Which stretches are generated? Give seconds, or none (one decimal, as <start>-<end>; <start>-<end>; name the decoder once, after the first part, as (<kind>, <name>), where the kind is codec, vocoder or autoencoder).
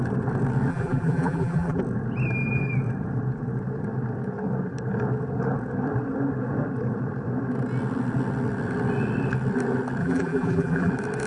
0.7-1.8 (vocoder, BigVGAN v2); 10.0-10.9